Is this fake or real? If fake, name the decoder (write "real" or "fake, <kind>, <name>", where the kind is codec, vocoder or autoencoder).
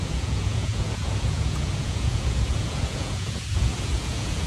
fake, vocoder, Vocos